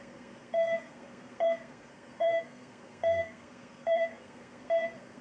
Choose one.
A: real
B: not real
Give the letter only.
B